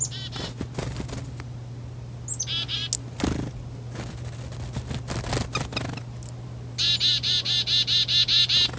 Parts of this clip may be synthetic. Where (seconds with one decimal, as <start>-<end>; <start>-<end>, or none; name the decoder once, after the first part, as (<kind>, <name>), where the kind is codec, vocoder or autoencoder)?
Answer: none